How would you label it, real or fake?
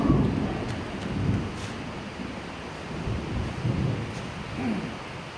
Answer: real